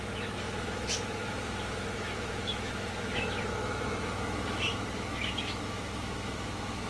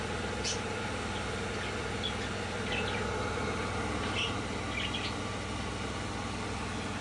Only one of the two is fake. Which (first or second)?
first